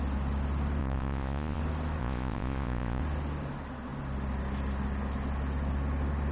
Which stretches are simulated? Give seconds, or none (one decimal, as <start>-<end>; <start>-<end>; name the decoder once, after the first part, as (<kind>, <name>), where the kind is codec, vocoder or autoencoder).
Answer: 0.8-1.6 (vocoder, Vocos); 2.0-3.0